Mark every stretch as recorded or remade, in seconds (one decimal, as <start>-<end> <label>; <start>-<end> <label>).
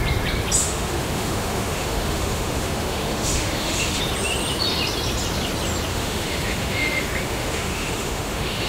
0.0-0.6 recorded; 0.6-4.0 remade; 4.0-5.9 recorded; 5.9-8.7 remade